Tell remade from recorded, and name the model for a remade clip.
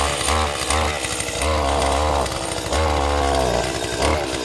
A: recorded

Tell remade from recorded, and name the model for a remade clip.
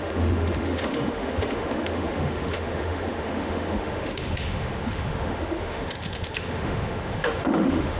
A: remade, autoencoder, DAC-VAE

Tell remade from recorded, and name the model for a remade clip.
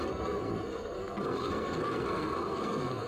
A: remade, codec, SNAC